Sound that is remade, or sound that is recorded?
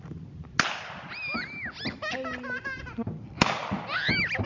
recorded